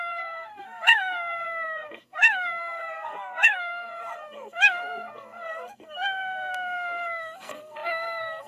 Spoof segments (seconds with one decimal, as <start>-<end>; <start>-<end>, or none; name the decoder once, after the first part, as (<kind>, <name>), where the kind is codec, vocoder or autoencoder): 0.0-8.5 (codec, SNAC)